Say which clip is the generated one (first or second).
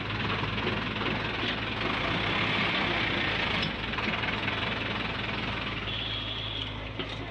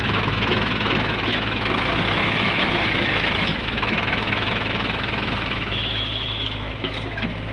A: second